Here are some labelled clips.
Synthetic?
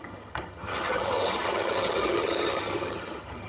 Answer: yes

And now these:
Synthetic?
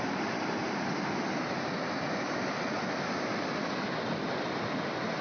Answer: no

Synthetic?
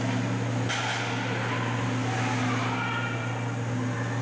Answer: no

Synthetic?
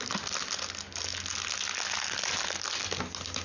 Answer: no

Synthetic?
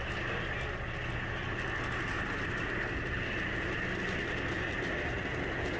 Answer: no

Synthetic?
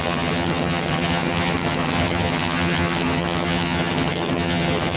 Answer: yes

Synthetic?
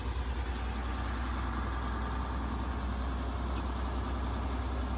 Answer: no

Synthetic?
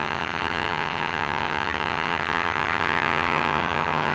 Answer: yes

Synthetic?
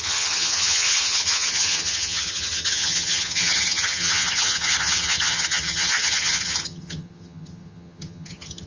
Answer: yes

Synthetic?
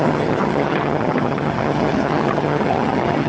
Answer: yes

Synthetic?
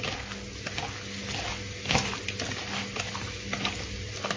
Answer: no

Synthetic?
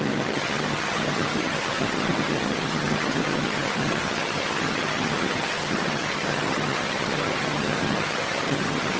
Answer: yes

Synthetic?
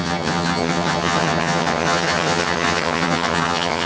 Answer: yes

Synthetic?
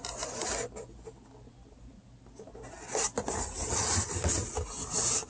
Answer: no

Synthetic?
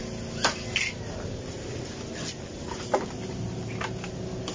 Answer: no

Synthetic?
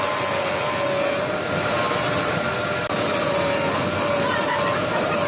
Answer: no